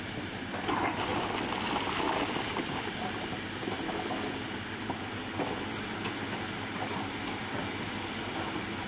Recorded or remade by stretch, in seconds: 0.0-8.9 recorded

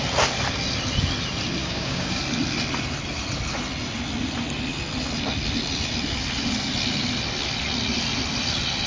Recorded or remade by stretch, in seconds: 0.0-1.6 recorded; 1.6-2.2 remade; 2.2-8.9 recorded

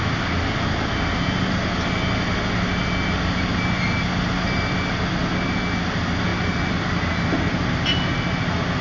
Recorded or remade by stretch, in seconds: 0.0-8.8 recorded

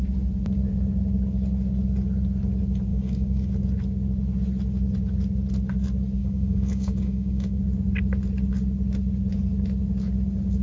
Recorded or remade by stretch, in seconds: 0.0-2.9 recorded; 2.9-3.5 remade; 3.5-6.2 recorded; 6.2-7.6 remade; 7.6-10.6 recorded

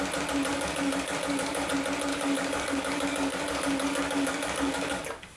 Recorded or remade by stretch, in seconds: 0.0-0.5 recorded; 0.5-1.7 remade; 1.7-2.1 recorded; 2.1-5.4 remade

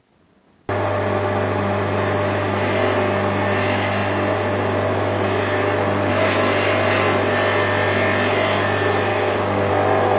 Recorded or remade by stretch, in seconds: 0.0-9.1 recorded; 9.1-9.7 remade; 9.7-10.2 recorded